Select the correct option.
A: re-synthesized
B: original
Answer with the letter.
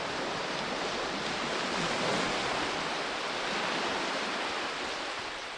B